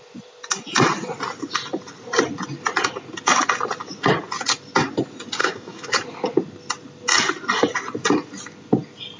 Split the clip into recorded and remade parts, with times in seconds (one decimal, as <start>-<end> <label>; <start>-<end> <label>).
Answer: 0.0-5.4 recorded; 5.4-5.9 remade; 5.9-9.2 recorded